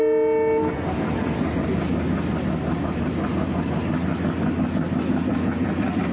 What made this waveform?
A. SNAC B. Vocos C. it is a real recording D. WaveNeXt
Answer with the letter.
C